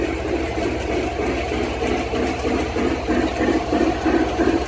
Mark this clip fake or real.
fake